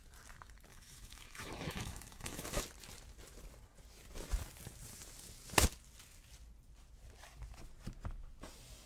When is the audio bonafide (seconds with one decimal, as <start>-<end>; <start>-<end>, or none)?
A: 0.0-0.7; 2.6-8.9